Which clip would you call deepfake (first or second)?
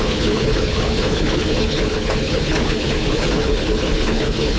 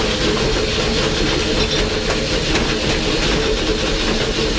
first